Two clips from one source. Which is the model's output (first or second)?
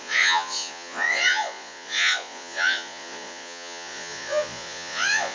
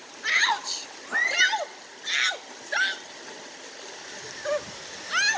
first